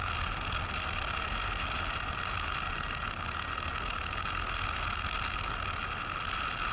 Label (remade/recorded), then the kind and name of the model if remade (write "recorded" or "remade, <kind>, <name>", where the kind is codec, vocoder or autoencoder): recorded